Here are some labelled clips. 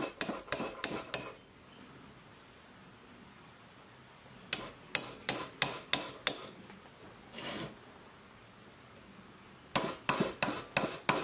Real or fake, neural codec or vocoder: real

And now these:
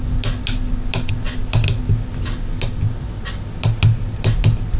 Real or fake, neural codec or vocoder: real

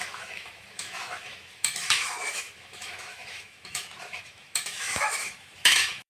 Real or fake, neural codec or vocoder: fake, autoencoder, DAC-VAE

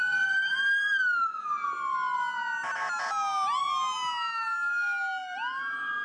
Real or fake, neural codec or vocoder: real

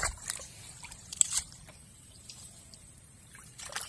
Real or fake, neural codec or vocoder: fake, vocoder, BigVGAN v2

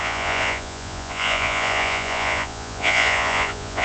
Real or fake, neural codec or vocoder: fake, vocoder, Vocos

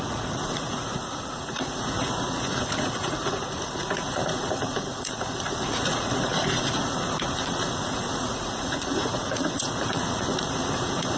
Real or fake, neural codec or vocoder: fake, vocoder, Vocos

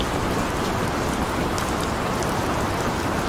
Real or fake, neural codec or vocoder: real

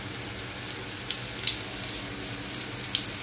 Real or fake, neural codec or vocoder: real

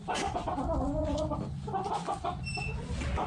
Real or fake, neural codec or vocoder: real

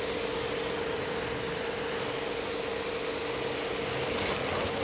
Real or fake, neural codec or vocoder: real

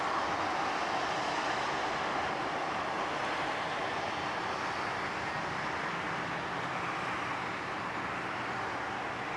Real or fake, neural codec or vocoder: real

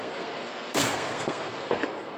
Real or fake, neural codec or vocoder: fake, codec, SNAC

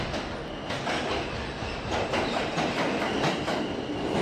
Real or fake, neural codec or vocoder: real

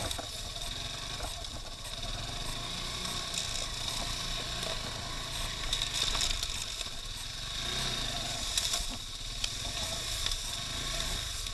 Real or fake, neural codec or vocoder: real